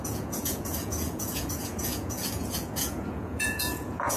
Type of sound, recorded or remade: remade